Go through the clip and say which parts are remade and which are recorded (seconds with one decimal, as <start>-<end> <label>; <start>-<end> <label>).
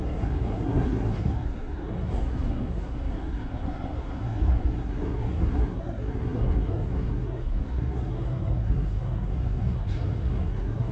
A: 0.0-10.9 remade